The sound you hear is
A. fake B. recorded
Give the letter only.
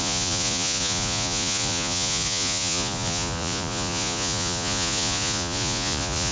A